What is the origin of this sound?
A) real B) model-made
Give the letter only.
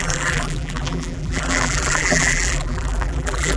B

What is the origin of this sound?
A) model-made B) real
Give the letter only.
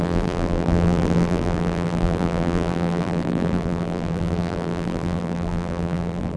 A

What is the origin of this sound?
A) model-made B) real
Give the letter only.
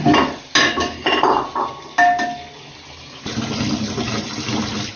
B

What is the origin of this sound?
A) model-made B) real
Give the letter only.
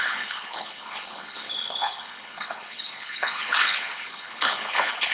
A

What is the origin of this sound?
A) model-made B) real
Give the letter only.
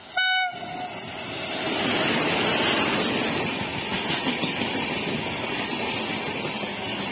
B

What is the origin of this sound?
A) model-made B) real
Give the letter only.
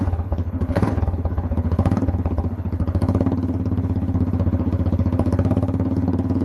A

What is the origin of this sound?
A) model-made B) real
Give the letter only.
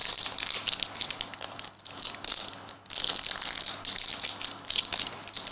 B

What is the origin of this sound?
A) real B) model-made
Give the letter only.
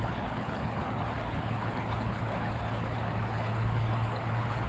B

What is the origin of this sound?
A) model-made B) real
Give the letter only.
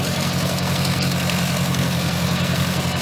A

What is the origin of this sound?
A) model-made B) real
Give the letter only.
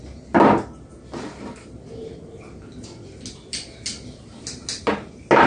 B